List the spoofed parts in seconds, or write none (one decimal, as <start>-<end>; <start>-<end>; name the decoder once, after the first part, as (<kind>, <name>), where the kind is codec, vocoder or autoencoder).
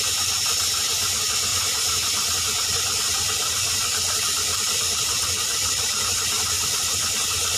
4.5-6.0 (vocoder, BigVGAN v2)